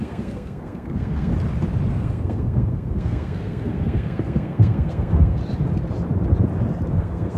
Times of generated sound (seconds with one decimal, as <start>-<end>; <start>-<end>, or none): 0.0-1.3; 1.9-5.4; 6.9-7.4